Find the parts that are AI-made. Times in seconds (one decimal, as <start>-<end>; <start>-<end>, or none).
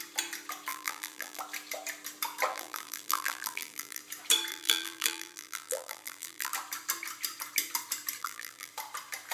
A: 0.7-1.4; 2.5-4.0; 4.5-6.5; 8.2-8.7